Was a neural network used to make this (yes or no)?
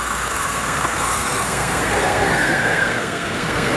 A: yes